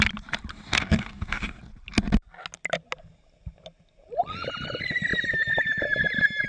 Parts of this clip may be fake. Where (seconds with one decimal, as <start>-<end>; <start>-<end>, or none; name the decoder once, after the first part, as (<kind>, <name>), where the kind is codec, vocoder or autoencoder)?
0.5-1.6 (codec, DAC)